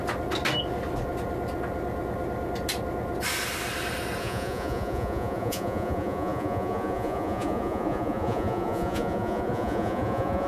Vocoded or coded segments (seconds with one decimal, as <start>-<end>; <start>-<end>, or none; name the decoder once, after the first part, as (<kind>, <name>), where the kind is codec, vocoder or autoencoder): 4.2-10.5 (vocoder, Vocos)